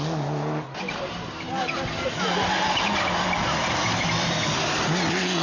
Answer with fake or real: real